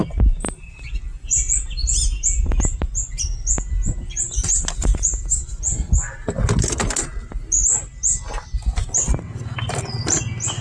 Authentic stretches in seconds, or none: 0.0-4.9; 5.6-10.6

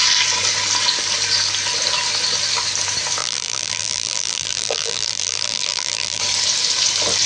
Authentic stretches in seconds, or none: 0.0-3.2; 6.2-7.3

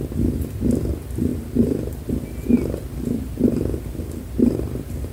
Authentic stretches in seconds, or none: 0.0-5.1

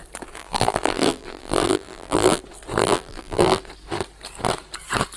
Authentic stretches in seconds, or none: 0.0-0.4; 2.4-2.8; 3.6-5.2

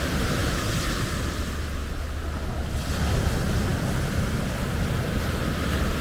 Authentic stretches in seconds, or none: 0.0-6.0

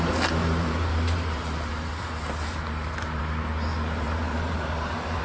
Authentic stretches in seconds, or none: 0.0-0.4; 3.2-3.7

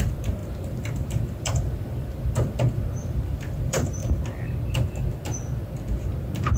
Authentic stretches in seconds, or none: 4.0-6.6

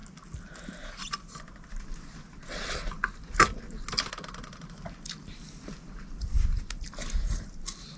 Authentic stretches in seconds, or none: 0.0-8.0